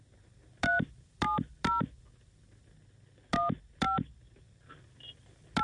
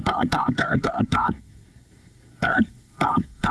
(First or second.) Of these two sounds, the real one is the first